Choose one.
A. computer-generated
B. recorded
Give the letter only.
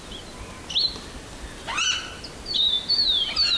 B